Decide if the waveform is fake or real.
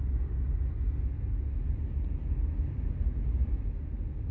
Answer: real